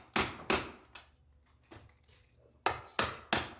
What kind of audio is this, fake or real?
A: real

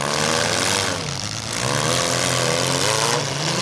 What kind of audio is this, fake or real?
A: real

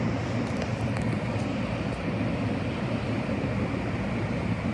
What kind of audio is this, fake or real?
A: real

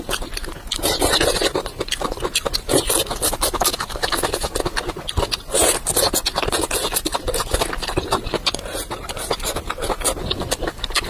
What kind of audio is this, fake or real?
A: real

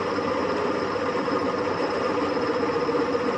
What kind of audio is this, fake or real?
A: real